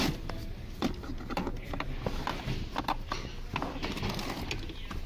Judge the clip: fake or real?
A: real